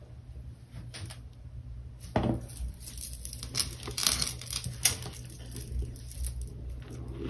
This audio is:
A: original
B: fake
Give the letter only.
A